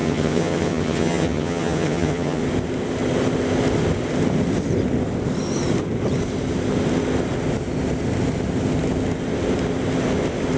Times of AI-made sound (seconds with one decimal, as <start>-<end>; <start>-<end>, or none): 0.0-2.4